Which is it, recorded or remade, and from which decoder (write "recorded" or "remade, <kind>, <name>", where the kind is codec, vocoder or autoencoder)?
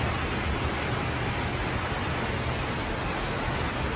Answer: recorded